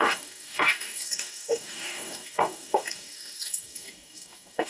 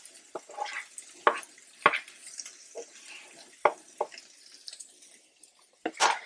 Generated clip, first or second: first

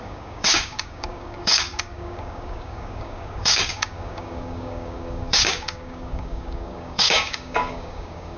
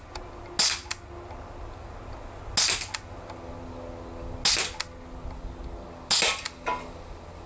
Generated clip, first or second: first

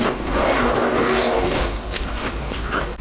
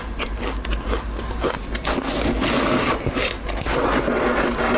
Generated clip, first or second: first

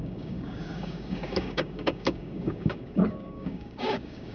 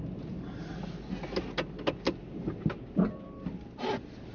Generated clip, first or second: first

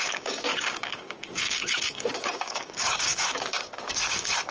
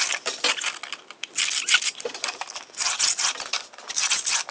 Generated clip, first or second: first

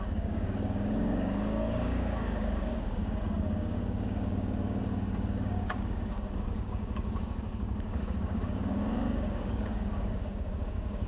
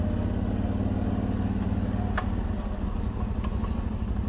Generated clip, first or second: first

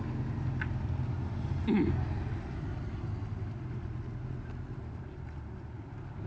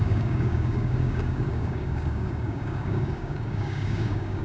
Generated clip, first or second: second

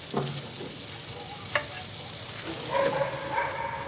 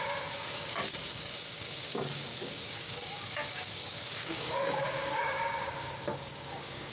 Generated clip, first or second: second